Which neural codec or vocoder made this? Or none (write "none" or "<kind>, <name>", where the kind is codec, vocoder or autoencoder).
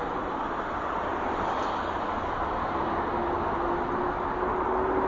none